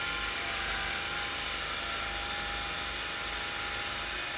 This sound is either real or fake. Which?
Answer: real